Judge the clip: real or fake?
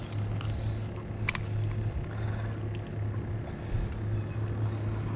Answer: real